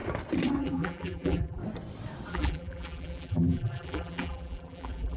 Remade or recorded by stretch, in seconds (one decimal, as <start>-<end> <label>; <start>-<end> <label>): 0.0-0.6 recorded; 0.6-1.6 remade; 1.6-2.3 recorded; 2.3-5.2 remade